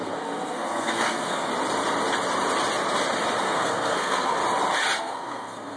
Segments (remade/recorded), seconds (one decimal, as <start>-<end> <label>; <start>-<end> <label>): 0.0-1.5 remade; 1.5-3.4 recorded; 3.4-4.4 remade; 4.4-5.0 recorded; 5.0-5.8 remade